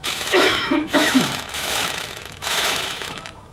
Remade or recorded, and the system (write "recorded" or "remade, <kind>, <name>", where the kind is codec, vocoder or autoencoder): remade, autoencoder, DAC-VAE